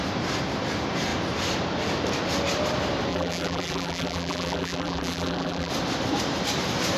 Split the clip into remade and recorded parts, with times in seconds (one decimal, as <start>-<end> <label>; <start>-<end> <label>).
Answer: 0.0-3.1 recorded; 3.1-5.7 remade; 5.7-7.0 recorded